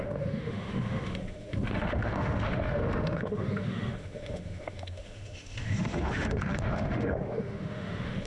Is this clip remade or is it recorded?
remade